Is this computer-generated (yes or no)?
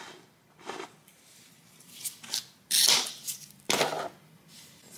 yes